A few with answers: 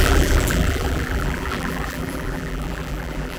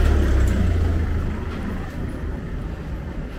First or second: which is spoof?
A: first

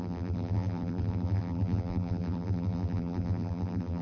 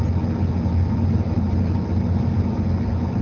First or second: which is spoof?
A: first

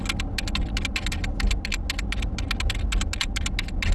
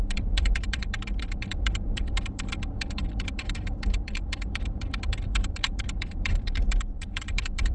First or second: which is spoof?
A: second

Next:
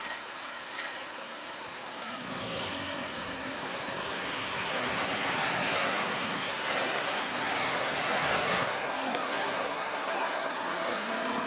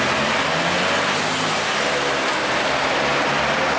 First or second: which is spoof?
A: first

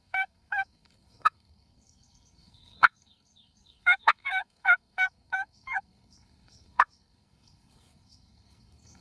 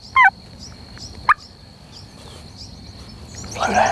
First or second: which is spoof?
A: first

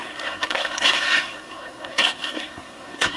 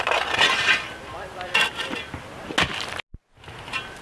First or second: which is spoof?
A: first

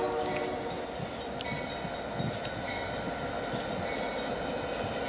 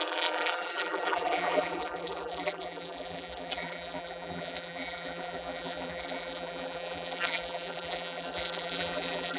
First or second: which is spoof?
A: second